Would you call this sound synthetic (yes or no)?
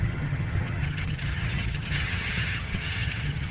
yes